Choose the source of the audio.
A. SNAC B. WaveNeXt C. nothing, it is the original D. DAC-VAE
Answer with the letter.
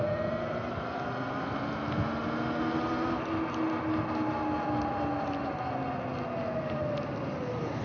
C